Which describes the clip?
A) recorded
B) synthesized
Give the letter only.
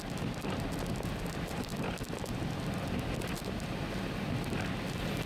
A